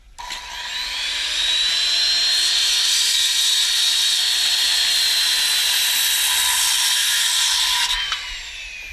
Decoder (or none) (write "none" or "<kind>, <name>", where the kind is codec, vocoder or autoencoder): none